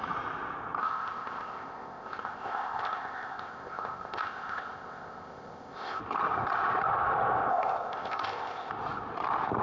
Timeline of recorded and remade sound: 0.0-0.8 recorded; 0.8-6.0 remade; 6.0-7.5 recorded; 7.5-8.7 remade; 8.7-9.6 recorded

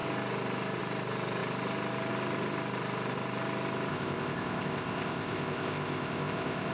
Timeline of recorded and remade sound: 0.0-3.9 recorded; 3.9-6.7 remade